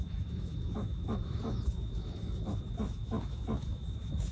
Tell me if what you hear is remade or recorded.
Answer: remade